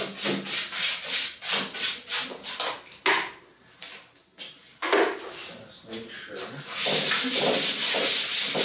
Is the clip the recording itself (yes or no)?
yes